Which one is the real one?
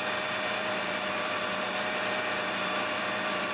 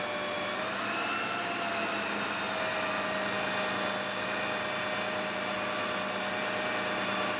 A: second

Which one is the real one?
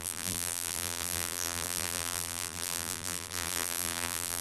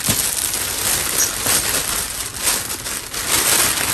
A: second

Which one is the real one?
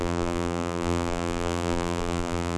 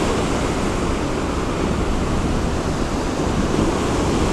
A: second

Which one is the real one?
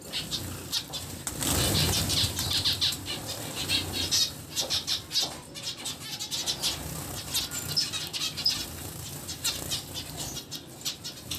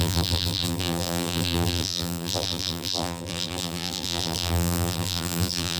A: first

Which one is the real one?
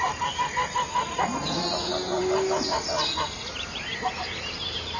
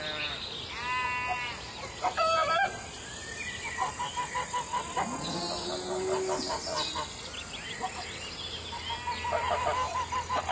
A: second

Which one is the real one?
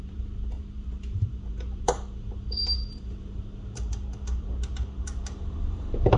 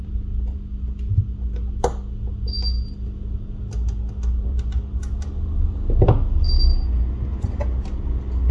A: second